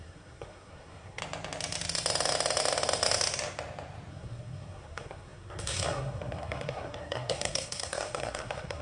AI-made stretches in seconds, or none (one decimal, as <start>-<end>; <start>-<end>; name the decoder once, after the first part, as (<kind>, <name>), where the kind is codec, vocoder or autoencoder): 0.0-1.2 (codec, SNAC); 4.1-8.8